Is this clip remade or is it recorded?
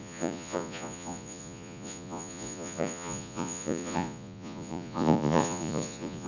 remade